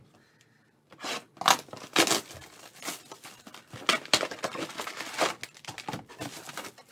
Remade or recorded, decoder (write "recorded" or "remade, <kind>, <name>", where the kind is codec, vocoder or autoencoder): recorded